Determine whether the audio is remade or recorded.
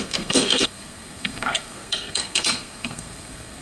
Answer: remade